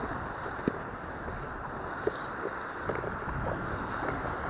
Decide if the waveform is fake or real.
real